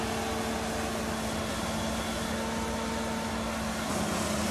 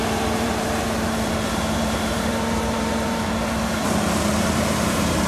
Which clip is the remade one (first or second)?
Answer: second